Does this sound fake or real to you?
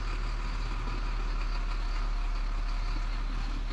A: real